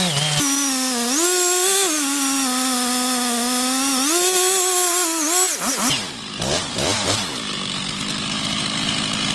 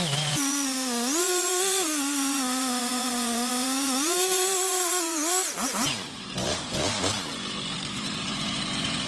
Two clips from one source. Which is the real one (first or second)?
first